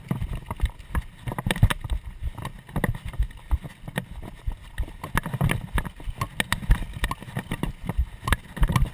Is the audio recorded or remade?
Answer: recorded